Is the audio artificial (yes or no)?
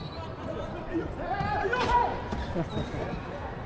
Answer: no